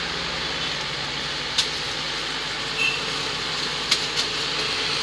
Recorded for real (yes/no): yes